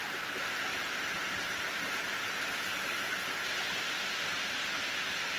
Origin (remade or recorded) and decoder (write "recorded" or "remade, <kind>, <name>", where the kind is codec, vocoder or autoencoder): recorded